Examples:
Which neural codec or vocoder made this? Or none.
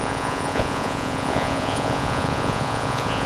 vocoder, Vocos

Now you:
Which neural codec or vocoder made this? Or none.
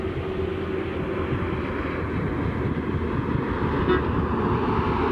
none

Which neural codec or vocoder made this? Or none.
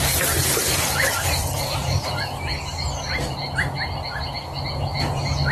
none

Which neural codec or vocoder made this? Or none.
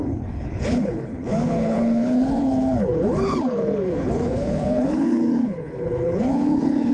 codec, HILCodec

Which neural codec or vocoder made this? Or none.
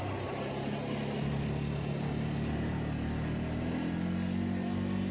none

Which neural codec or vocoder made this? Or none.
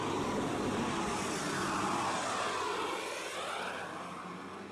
none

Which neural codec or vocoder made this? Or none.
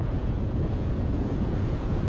vocoder, Vocos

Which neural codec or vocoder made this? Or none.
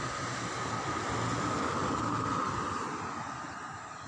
none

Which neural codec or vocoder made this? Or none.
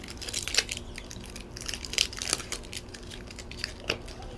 vocoder, BigVGAN v2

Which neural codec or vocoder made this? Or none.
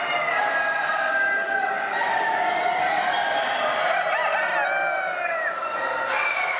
none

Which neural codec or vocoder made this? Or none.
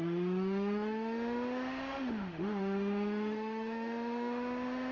autoencoder, DAC-VAE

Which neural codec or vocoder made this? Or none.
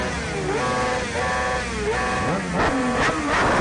none